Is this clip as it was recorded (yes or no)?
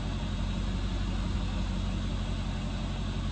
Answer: yes